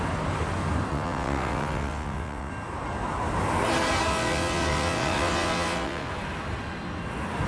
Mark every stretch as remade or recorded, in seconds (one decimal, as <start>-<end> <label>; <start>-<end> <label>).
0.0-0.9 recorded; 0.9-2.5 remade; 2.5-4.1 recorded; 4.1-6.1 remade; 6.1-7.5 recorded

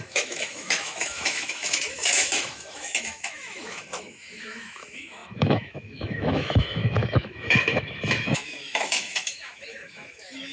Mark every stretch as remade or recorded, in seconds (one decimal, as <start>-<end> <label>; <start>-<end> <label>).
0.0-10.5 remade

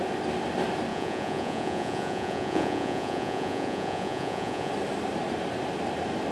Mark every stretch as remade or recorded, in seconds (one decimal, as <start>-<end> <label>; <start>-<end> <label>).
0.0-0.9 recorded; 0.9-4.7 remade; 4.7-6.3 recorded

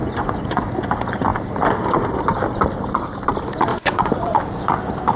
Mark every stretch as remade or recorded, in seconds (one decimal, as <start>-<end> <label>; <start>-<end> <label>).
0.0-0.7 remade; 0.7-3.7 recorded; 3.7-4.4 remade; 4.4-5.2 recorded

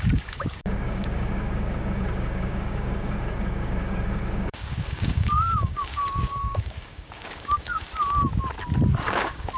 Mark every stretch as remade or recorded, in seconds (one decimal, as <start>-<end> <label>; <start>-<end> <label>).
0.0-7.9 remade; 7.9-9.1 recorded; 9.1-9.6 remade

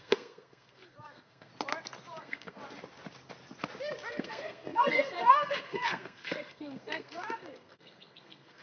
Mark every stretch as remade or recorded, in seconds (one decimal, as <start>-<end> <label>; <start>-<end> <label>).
0.0-1.5 remade; 1.5-2.2 recorded; 2.2-2.6 remade; 2.6-4.1 recorded; 4.1-8.6 remade

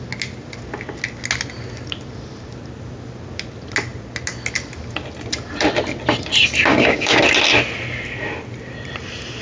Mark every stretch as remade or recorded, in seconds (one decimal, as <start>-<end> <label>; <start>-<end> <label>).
0.0-6.7 recorded; 6.7-7.2 remade; 7.2-9.4 recorded

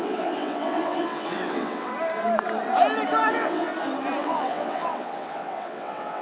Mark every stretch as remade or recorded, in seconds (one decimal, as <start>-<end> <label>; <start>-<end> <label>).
0.0-1.9 remade; 1.9-3.3 recorded; 3.3-3.7 remade; 3.7-4.2 recorded; 4.2-6.2 remade